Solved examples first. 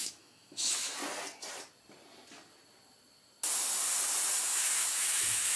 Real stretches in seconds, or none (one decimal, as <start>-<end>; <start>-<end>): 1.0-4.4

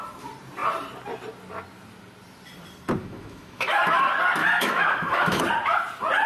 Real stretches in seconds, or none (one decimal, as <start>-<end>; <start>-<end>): 0.0-3.0; 3.8-4.4; 5.4-6.3

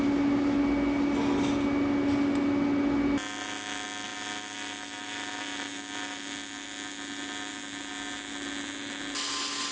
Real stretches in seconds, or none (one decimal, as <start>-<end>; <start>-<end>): 0.0-9.7

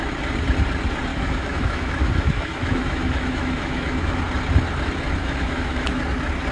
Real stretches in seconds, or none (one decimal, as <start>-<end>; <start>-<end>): 0.0-1.1; 4.2-5.2; 6.0-6.5